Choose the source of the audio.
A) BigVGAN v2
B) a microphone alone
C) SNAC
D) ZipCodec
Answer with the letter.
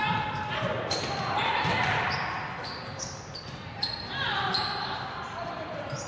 A